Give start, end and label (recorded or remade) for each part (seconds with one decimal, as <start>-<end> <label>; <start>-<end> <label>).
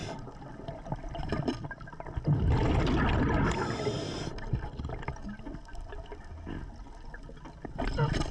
0.0-0.8 remade; 0.8-8.3 recorded